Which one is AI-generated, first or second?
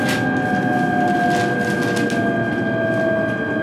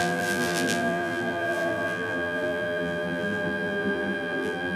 second